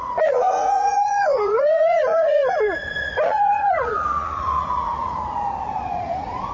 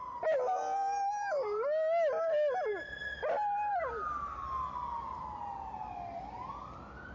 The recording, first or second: second